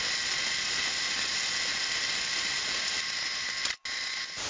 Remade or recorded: recorded